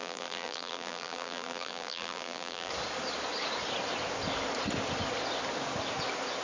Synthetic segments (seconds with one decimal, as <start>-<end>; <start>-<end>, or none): 0.0-2.7